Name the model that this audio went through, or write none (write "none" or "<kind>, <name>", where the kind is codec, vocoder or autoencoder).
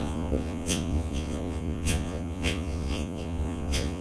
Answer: vocoder, Vocos